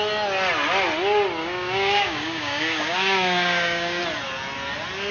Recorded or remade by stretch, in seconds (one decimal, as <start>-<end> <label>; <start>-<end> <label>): 0.0-1.4 recorded; 1.4-4.0 remade; 4.0-5.1 recorded